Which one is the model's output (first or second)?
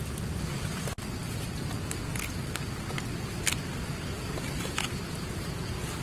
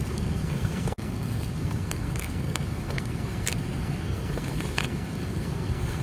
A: second